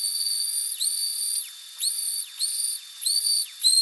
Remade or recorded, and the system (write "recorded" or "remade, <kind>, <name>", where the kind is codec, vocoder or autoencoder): remade, vocoder, Vocos